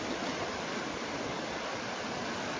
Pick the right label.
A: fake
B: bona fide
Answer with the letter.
B